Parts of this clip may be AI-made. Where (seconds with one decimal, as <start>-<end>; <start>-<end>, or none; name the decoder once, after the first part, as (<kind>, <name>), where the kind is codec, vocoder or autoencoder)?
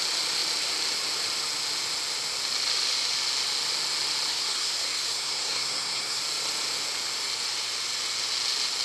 4.3-6.2 (codec, SNAC)